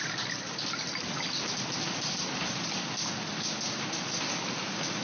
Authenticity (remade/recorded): recorded